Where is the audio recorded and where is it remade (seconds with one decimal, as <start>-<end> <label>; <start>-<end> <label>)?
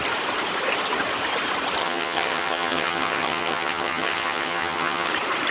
0.0-1.8 recorded; 1.8-5.1 remade; 5.1-5.5 recorded